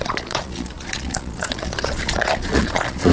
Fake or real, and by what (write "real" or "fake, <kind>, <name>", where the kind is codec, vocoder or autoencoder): fake, vocoder, Vocos